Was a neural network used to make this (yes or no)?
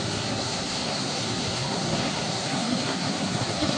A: yes